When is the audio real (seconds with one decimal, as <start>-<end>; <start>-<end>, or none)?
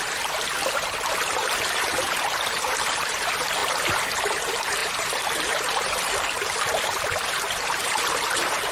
3.6-4.2